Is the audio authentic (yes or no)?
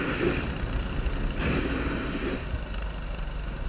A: yes